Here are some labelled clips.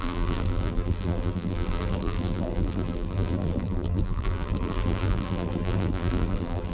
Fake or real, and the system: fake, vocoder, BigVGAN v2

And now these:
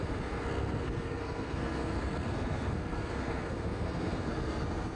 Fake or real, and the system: fake, codec, SNAC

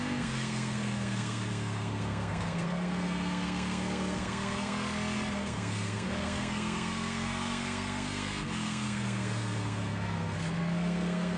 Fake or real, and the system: fake, codec, SNAC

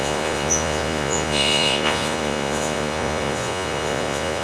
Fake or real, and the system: fake, vocoder, Vocos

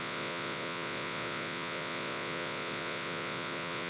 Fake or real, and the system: fake, vocoder, Vocos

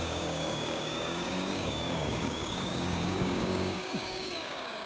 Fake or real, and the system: fake, codec, DAC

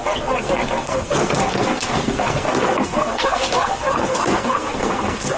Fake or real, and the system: fake, codec, SNAC